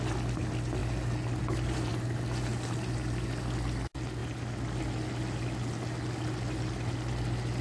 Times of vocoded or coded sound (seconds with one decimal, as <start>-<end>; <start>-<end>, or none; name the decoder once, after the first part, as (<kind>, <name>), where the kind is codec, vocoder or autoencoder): none